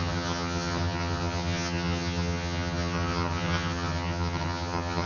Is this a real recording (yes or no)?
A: no